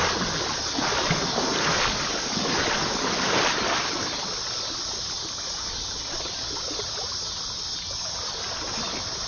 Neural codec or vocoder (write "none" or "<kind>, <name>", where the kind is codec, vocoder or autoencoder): none